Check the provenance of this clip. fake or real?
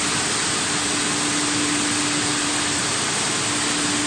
real